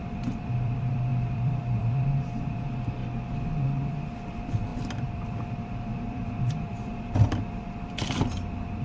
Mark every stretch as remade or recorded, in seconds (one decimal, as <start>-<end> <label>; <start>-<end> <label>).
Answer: 0.0-3.0 remade; 3.0-3.9 recorded; 3.9-8.8 remade